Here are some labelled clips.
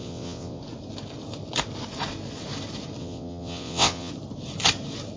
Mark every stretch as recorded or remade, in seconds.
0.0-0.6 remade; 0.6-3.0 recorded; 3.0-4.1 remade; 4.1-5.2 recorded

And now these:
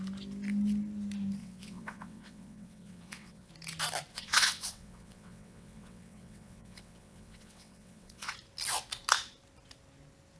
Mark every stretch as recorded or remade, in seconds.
0.0-1.4 recorded; 1.4-3.5 remade; 3.5-4.1 recorded; 4.1-8.3 remade; 8.3-10.4 recorded

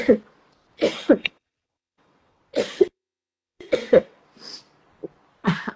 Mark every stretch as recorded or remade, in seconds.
0.0-0.9 recorded; 0.9-2.4 remade; 2.4-2.9 recorded; 2.9-4.2 remade; 4.2-5.8 recorded

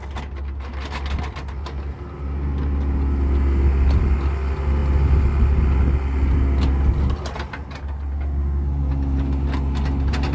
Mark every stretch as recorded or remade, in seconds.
0.0-10.3 recorded

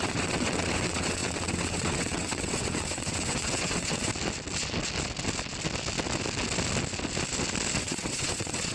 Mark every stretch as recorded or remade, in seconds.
0.0-4.1 remade; 4.1-7.8 recorded; 7.8-8.7 remade

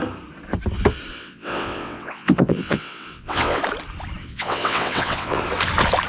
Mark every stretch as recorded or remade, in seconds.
0.0-1.1 recorded; 1.1-3.6 remade; 3.6-4.2 recorded; 4.2-5.4 remade; 5.4-6.1 recorded